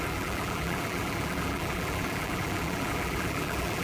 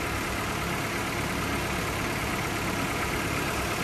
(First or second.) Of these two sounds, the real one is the second